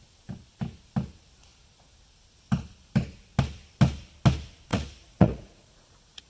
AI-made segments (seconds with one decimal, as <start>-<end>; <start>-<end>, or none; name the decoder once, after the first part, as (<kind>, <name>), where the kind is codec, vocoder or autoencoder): 4.7-6.3 (vocoder, Vocos)